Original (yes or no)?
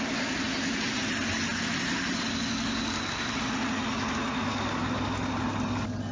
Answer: yes